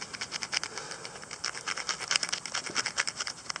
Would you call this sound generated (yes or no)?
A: no